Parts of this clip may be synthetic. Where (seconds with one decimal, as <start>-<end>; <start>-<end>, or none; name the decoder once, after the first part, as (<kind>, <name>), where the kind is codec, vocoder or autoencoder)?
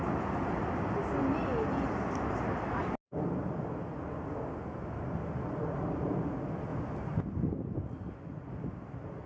none